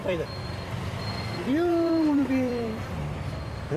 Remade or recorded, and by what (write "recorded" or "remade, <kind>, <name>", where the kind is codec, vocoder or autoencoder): remade, vocoder, BigVGAN v2